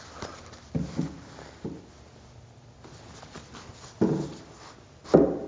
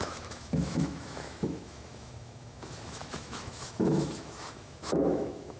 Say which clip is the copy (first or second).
second